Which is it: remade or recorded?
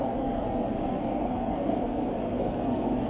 remade